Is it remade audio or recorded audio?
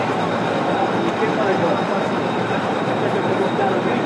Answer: remade